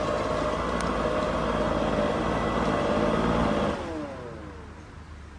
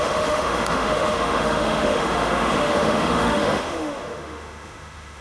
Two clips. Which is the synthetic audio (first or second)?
second